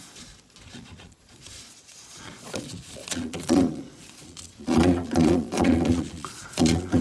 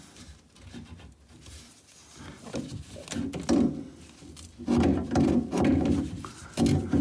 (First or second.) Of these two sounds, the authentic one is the second